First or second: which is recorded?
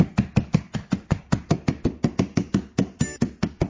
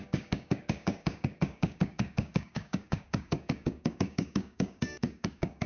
first